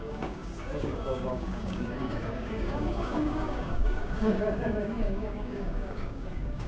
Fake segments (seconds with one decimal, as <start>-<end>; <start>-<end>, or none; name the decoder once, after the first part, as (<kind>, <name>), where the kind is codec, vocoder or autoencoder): 0.0-6.7 (codec, DAC)